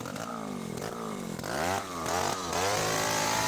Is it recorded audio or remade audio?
remade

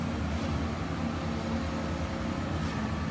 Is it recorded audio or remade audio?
recorded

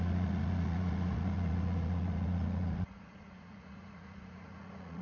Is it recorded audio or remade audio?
remade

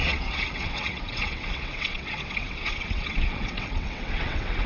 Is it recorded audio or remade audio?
remade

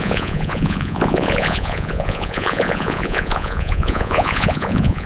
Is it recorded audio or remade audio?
remade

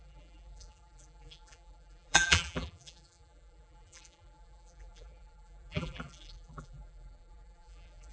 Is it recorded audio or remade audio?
remade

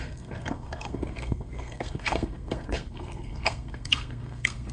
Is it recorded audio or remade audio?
remade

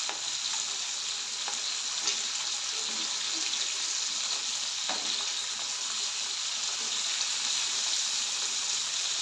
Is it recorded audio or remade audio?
recorded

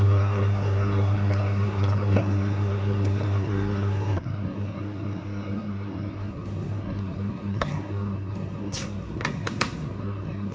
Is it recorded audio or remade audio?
remade